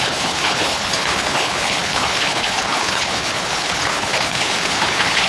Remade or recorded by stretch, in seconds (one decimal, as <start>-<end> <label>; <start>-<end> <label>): 0.0-5.3 remade

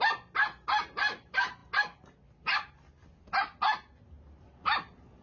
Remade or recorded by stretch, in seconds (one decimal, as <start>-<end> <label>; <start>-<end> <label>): 0.0-5.2 recorded

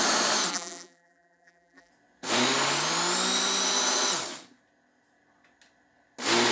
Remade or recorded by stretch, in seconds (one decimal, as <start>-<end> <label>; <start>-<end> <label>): 0.0-0.5 recorded; 0.5-1.9 remade; 1.9-6.5 recorded

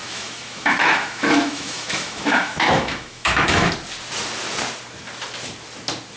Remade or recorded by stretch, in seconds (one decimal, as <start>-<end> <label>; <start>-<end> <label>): 0.0-3.7 remade; 3.7-6.2 recorded

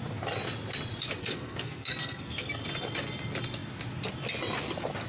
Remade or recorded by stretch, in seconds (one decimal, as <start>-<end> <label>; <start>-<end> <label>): 0.0-1.2 recorded; 1.2-2.6 remade; 2.6-5.1 recorded

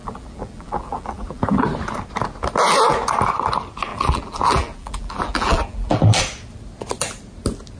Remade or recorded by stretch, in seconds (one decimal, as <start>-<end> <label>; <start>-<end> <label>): 0.0-1.6 remade; 1.6-3.9 recorded; 3.9-6.2 remade; 6.2-7.8 recorded

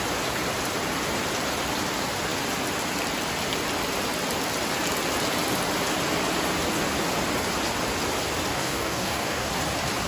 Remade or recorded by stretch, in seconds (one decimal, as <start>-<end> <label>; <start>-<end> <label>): 0.0-8.5 recorded; 8.5-9.5 remade; 9.5-10.1 recorded

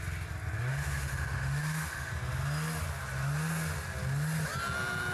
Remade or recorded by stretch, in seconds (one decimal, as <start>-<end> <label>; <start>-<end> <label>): 0.0-0.7 recorded; 0.7-2.1 remade; 2.1-5.1 recorded